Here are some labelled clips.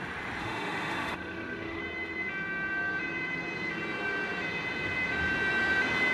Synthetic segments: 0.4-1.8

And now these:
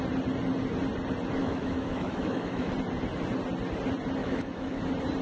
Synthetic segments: 1.4-2.7; 4.2-4.8

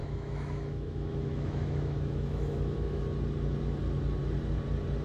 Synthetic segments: 0.0-3.0